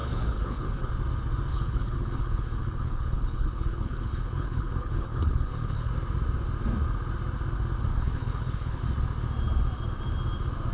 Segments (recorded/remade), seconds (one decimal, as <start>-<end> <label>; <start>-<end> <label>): 0.0-0.9 remade; 0.9-1.5 recorded; 1.5-5.9 remade; 5.9-7.9 recorded; 7.9-8.8 remade; 8.8-10.7 recorded